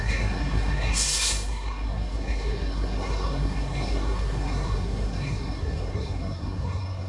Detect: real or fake fake